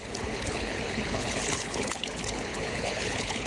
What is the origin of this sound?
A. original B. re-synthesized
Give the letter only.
B